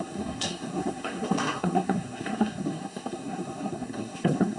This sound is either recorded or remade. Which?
remade